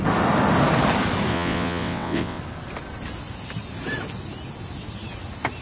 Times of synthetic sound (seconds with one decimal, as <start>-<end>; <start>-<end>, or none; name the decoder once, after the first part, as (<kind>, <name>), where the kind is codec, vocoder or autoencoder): 1.3-2.4 (vocoder, WaveNeXt)